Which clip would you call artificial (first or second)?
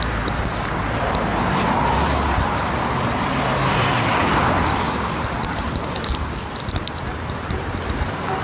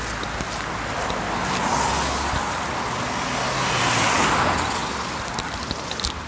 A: first